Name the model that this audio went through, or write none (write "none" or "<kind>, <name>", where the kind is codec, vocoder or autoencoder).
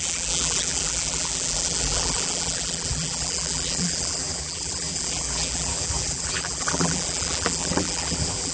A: vocoder, BigVGAN v2